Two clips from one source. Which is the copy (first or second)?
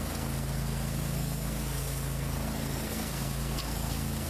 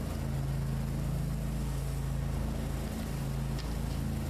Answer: first